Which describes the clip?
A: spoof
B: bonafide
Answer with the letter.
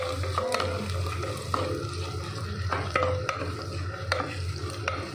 B